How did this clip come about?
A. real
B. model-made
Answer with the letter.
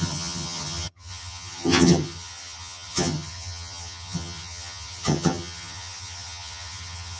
B